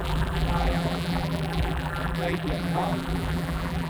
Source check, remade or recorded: remade